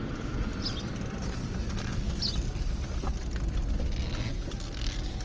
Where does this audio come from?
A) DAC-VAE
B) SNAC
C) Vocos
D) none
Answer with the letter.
D